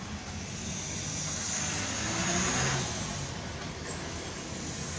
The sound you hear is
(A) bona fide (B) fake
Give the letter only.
A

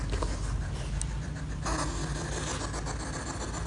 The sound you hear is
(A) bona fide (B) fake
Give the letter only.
A